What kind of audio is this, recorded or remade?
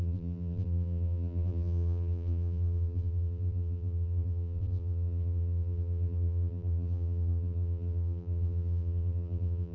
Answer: remade